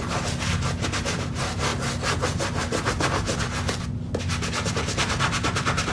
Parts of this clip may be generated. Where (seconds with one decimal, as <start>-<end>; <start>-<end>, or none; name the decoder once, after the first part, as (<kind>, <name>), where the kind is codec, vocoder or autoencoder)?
none